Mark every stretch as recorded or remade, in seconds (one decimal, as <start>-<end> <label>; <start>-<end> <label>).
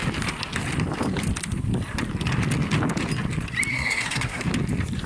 0.0-3.7 recorded; 3.7-4.4 remade; 4.4-5.1 recorded